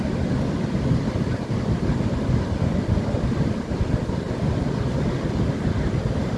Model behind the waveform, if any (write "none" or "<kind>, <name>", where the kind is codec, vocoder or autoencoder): none